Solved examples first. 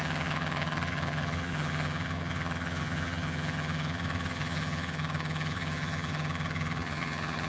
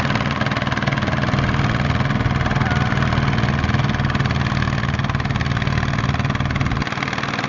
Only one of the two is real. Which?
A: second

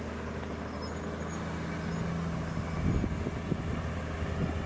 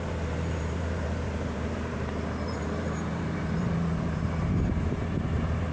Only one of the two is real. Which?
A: first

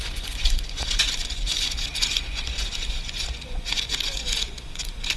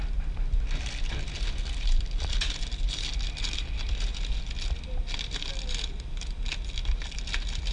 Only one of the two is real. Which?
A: second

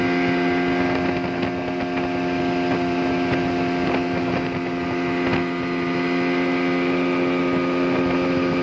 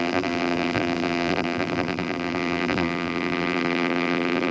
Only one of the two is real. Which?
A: first